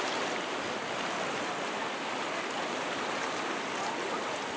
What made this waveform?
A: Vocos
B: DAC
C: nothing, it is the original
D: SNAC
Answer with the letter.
C